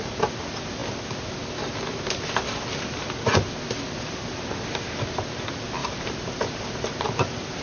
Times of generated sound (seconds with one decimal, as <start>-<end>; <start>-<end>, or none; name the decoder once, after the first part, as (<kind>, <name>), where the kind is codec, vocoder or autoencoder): 5.8-7.6 (vocoder, BigVGAN v2)